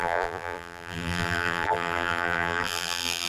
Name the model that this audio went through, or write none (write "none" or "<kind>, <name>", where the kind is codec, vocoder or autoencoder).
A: vocoder, BigVGAN v2